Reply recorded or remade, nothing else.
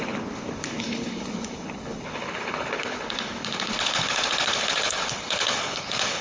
remade